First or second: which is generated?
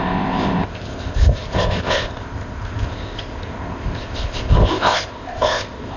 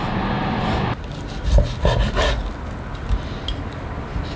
first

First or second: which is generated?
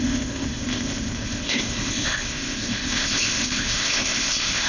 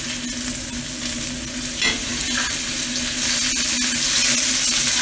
first